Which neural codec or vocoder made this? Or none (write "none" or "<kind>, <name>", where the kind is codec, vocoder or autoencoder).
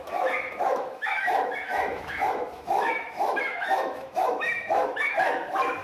autoencoder, DAC-VAE